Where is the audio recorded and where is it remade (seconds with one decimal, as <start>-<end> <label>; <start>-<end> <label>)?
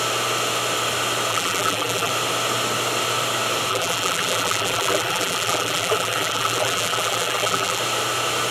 0.0-1.3 recorded; 1.3-2.1 remade; 2.1-3.7 recorded; 3.7-7.8 remade; 7.8-8.5 recorded